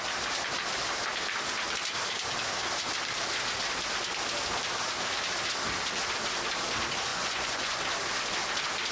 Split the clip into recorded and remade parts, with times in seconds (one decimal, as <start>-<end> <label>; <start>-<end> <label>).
0.0-7.1 recorded; 7.1-7.8 remade; 7.8-8.9 recorded